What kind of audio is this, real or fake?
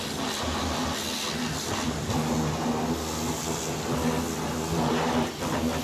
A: real